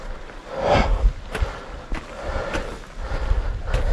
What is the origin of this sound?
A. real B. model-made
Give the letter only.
A